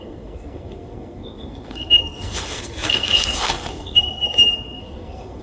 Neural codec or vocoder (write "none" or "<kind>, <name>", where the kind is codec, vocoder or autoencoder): codec, SNAC